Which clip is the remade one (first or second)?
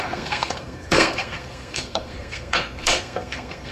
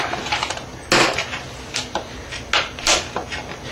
first